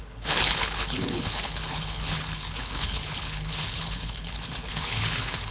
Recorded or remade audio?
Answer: remade